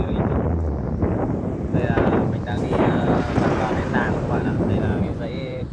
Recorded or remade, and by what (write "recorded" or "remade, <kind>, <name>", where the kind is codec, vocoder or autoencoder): remade, vocoder, BigVGAN v2